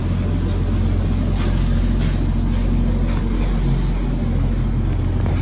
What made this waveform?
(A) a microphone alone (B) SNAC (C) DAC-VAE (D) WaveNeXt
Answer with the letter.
A